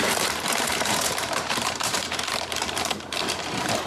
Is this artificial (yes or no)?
yes